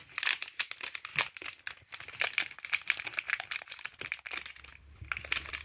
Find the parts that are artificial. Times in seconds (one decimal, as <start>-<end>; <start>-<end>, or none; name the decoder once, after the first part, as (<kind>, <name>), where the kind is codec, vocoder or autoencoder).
1.1-4.0 (vocoder, BigVGAN v2); 4.7-5.6

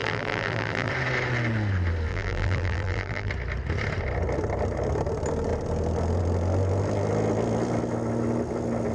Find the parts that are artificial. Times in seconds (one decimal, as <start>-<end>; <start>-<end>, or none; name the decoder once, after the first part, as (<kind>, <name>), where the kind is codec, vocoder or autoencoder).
0.0-0.9 (vocoder, BigVGAN v2); 2.1-3.3

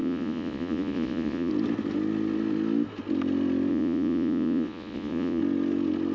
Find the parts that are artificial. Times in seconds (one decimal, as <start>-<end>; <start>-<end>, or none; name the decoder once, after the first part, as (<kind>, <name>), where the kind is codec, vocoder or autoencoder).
0.0-1.5 (vocoder, Vocos); 3.7-5.4

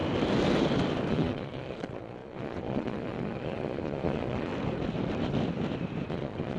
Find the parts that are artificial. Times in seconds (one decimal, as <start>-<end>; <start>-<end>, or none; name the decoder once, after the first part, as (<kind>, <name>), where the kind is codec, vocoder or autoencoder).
1.1-4.5 (vocoder, Vocos); 6.1-6.6

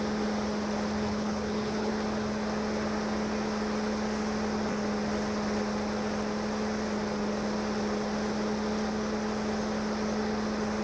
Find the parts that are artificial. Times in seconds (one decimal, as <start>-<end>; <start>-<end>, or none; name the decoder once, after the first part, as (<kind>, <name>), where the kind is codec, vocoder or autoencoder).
1.1-1.9 (codec, HILCodec)

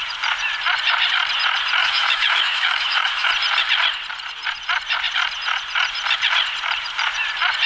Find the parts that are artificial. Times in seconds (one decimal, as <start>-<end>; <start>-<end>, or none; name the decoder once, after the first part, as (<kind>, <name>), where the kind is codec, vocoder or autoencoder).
1.8-3.3 (autoencoder, DAC-VAE)